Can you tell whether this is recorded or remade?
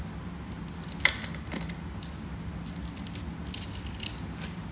recorded